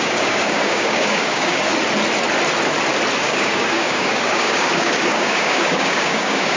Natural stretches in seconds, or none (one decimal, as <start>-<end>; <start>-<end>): 1.7-3.2